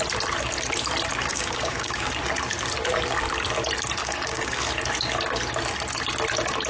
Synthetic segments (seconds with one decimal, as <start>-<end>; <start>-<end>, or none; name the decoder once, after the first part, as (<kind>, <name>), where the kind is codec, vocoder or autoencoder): 1.3-2.1 (codec, DAC); 4.0-4.7